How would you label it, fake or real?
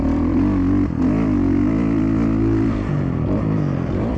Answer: fake